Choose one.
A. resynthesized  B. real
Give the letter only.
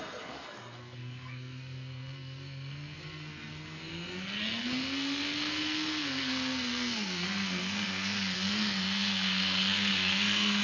A